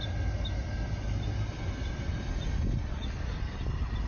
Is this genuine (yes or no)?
yes